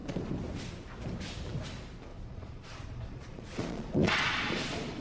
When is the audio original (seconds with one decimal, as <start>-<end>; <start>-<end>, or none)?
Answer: 0.0-2.1